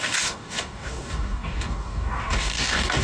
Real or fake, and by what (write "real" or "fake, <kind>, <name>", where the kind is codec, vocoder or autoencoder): fake, codec, DAC